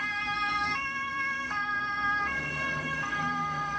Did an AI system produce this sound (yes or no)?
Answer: yes